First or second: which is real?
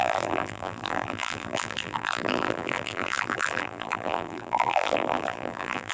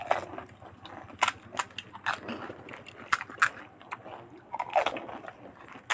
second